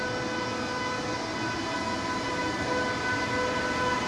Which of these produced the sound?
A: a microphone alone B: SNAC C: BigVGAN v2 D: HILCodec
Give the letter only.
A